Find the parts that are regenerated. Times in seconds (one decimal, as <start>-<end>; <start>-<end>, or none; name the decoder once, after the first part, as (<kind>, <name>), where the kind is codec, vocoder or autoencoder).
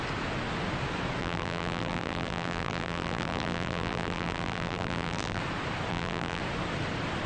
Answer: 1.2-5.4 (vocoder, BigVGAN v2); 5.9-6.4